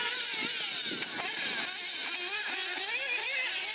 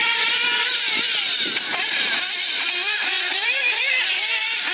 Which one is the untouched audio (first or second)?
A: first